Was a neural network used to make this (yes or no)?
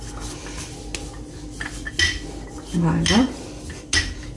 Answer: no